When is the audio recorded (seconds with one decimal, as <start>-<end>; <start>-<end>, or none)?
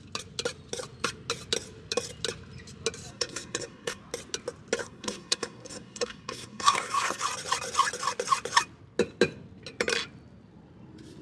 0.0-3.1; 4.0-4.8; 7.2-11.2